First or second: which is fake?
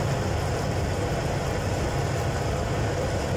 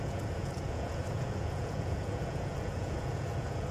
second